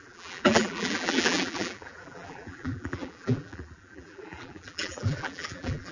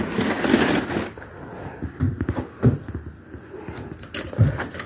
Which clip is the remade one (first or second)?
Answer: first